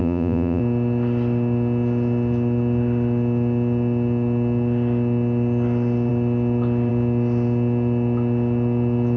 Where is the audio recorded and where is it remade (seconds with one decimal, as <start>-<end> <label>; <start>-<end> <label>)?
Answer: 0.0-0.6 remade; 0.6-9.2 recorded